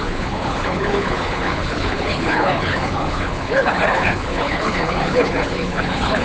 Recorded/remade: remade